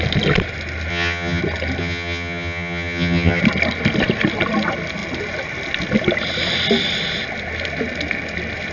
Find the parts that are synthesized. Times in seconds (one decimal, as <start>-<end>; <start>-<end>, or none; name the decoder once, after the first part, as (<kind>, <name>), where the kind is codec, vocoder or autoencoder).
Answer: 0.9-1.4 (vocoder, HiFi-GAN); 1.8-3.4